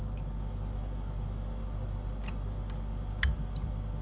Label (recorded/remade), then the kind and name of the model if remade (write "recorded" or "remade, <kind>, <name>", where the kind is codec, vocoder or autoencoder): recorded